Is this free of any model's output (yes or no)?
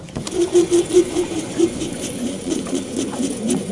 no